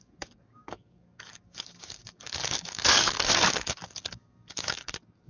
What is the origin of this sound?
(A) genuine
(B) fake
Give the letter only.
B